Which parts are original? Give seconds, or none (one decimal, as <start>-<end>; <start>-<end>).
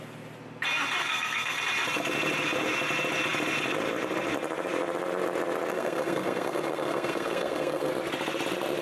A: 0.0-1.0; 1.6-5.7; 7.9-8.8